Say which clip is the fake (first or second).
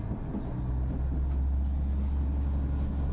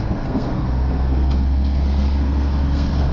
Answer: second